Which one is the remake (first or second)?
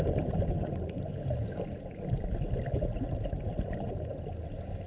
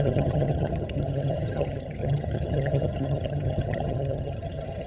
second